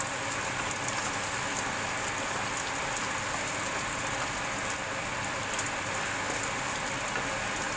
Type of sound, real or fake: real